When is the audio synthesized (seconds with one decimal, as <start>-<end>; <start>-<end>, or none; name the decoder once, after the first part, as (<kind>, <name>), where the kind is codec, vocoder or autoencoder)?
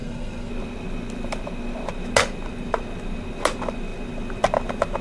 0.0-0.5 (codec, SNAC)